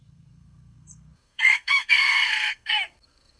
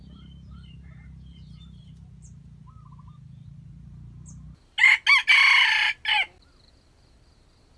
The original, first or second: second